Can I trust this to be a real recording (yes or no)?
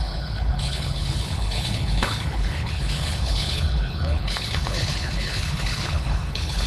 no